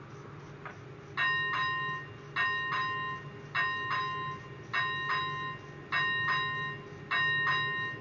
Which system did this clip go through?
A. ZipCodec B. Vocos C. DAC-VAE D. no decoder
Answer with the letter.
D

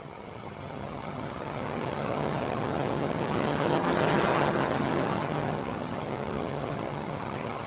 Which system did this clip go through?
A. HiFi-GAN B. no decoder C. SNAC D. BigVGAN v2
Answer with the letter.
A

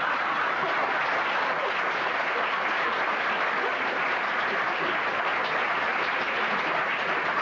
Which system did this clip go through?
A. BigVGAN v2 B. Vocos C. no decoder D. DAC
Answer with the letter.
C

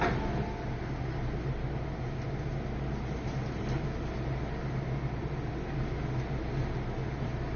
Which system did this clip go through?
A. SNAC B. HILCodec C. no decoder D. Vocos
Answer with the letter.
C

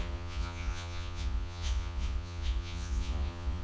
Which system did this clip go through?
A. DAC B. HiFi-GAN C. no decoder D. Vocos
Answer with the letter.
D